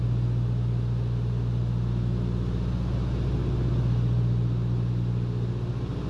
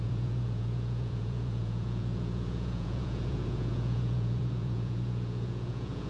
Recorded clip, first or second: first